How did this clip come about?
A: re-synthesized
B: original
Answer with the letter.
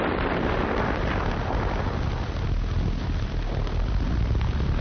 B